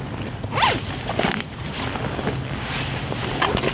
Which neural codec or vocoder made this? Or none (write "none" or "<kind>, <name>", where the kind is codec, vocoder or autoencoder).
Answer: none